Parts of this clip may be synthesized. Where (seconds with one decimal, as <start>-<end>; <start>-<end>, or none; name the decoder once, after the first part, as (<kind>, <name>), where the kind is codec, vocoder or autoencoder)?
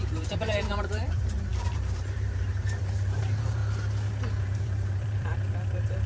0.0-3.6 (vocoder, BigVGAN v2); 4.4-6.1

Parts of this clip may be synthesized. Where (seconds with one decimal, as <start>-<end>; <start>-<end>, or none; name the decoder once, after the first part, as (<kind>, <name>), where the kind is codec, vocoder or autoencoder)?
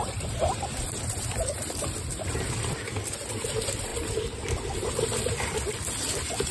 0.0-6.5 (vocoder, BigVGAN v2)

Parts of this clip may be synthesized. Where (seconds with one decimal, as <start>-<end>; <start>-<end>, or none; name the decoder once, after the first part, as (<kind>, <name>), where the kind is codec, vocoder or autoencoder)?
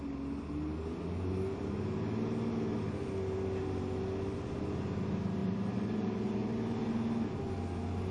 5.4-6.9 (vocoder, BigVGAN v2)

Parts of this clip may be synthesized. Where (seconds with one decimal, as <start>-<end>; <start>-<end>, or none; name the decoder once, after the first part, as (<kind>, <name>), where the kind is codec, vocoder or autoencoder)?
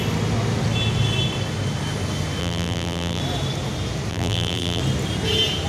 2.4-3.2 (vocoder, BigVGAN v2); 4.1-4.8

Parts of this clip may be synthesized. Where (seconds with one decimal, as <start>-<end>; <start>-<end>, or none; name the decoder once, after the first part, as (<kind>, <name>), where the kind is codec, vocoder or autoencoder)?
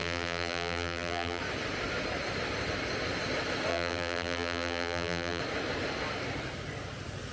0.0-1.4 (vocoder, BigVGAN v2); 3.7-5.4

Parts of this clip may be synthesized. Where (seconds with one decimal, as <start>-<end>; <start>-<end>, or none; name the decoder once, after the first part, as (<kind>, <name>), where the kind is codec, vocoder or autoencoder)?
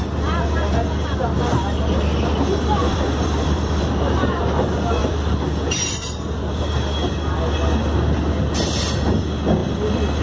2.8-3.9 (vocoder, BigVGAN v2); 5.0-6.6; 9.6-10.2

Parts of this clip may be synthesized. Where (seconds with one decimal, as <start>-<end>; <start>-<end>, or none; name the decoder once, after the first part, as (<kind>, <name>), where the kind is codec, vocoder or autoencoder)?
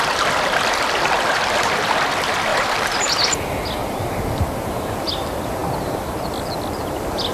2.5-3.1 (vocoder, BigVGAN v2); 3.8-5.1